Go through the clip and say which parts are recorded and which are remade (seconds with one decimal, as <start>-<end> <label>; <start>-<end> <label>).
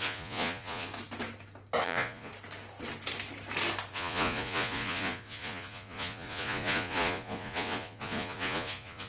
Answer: 0.0-0.9 remade; 0.9-1.8 recorded; 1.8-2.3 remade; 2.3-3.9 recorded; 3.9-9.1 remade